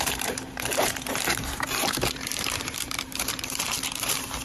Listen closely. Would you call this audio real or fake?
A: fake